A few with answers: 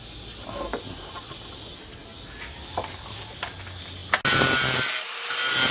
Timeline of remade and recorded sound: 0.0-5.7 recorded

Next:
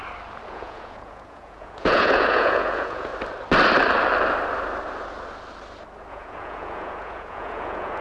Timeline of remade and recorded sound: 0.0-0.5 recorded; 0.5-3.1 remade; 3.1-6.1 recorded; 6.1-8.0 remade

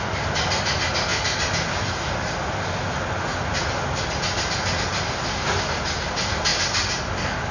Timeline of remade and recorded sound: 0.0-7.5 recorded

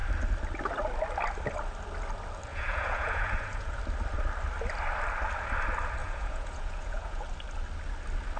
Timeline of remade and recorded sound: 0.0-2.5 recorded; 2.5-3.8 remade; 3.8-6.0 recorded; 6.0-7.2 remade; 7.2-8.4 recorded

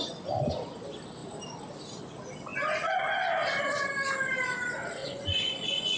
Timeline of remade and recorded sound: 0.0-5.0 recorded; 5.0-6.0 remade